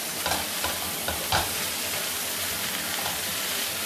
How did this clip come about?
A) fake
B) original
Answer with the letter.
A